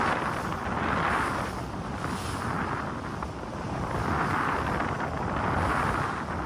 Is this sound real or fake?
real